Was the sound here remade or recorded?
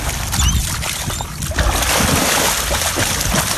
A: recorded